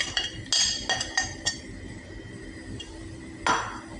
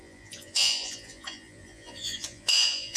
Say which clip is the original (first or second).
first